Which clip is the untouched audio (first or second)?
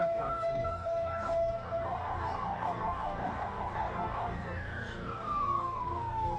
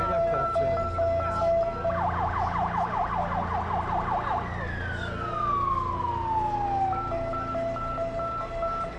second